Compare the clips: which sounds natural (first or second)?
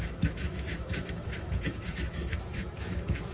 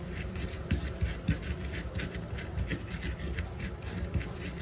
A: second